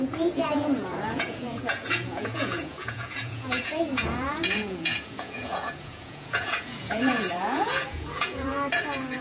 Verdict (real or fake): fake